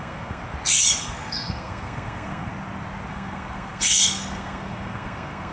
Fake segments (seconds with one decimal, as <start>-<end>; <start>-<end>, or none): 0.0-0.4; 1.0-2.5; 3.1-5.5